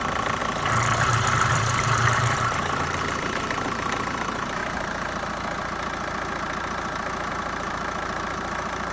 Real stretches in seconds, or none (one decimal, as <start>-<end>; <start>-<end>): 0.4-1.0; 4.6-7.3